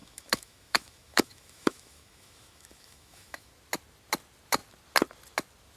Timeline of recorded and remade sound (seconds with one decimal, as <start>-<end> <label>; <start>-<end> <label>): 0.0-3.5 remade; 3.5-5.8 recorded